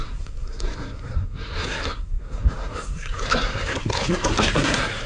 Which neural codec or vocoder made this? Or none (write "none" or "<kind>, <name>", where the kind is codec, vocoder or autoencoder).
codec, SNAC